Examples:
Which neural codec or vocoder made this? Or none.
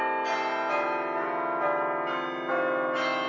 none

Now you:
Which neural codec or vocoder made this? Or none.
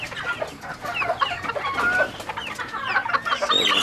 none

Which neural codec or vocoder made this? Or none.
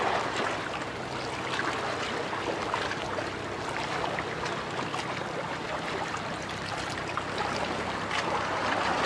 none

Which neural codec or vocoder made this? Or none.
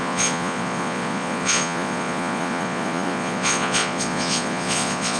vocoder, Vocos